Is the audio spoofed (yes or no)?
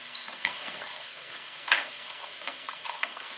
yes